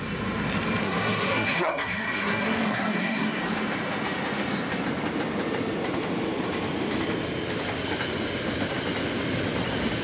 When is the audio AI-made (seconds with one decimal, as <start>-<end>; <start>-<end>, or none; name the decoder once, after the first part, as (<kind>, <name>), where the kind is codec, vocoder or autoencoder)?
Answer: 0.8-3.4 (codec, SNAC)